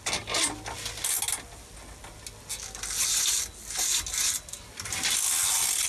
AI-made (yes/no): no